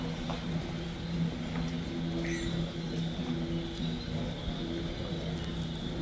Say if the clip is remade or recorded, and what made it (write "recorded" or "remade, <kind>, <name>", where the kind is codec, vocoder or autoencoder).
recorded